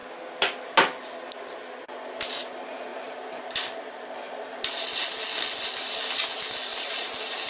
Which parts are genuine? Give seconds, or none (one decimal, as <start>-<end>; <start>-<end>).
0.0-2.9; 5.0-6.7